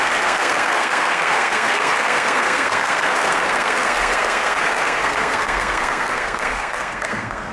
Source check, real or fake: fake